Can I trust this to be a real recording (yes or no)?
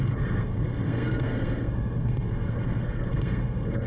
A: no